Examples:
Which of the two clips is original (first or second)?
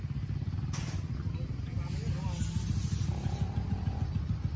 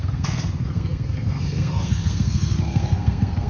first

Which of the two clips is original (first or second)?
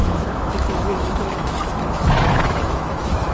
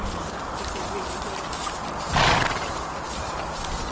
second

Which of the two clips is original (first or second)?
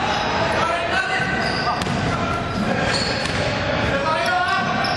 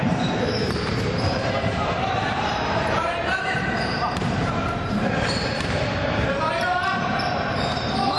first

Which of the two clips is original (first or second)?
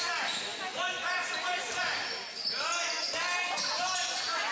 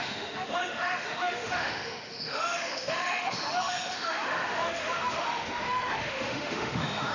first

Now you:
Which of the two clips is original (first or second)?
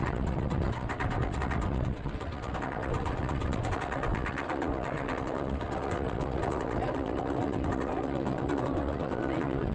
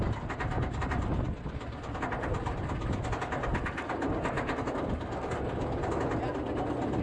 second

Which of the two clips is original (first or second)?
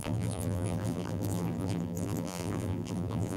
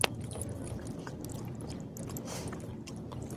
second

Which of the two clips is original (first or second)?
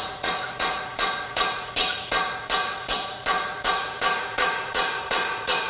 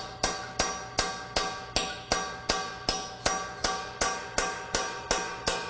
second